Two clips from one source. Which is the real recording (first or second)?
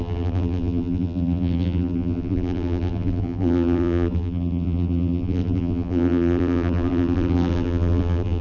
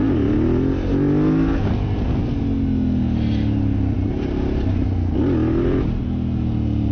second